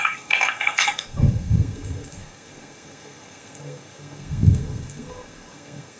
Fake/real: fake